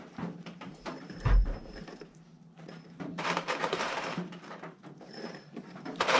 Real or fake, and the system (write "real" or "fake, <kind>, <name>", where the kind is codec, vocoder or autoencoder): fake, vocoder, BigVGAN v2